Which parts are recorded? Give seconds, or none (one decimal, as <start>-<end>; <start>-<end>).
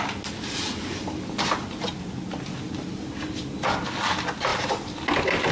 0.0-5.5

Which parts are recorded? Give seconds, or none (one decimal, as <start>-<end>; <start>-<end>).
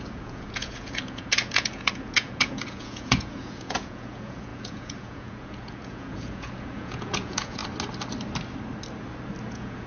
7.6-9.5